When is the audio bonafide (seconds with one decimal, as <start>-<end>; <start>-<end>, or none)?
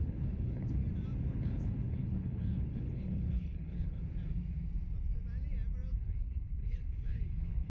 0.8-1.3; 4.0-5.9